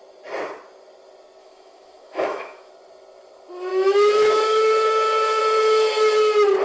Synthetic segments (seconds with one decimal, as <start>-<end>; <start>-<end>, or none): 1.4-2.7; 3.7-5.4